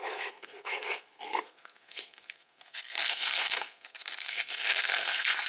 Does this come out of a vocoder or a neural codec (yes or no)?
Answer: yes